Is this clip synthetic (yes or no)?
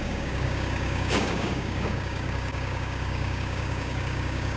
yes